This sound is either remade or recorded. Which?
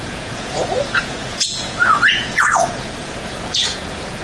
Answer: remade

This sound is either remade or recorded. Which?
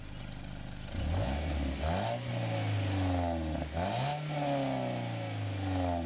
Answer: recorded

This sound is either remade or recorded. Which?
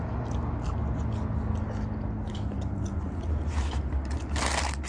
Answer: recorded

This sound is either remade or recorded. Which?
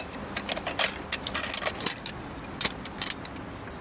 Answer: recorded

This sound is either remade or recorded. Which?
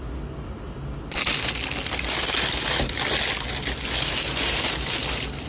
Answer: recorded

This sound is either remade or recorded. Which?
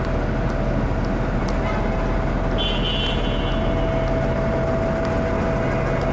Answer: recorded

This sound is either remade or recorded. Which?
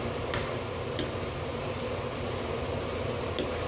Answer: recorded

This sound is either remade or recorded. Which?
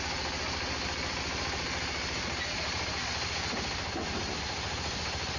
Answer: recorded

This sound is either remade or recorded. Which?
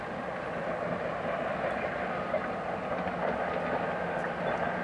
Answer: recorded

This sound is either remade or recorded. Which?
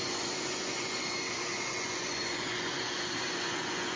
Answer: remade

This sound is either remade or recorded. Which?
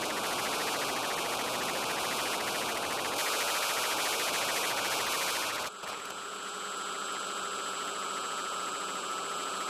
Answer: remade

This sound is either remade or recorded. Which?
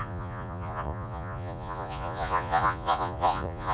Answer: remade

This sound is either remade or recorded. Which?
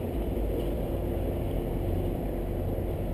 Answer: recorded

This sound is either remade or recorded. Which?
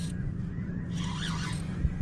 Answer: remade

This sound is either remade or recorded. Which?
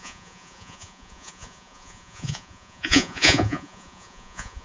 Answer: remade